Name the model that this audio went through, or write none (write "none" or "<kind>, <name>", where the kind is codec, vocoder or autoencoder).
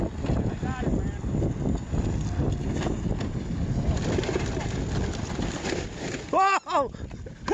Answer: none